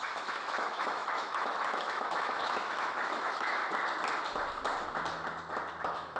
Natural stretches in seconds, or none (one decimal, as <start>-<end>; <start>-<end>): 3.6-5.8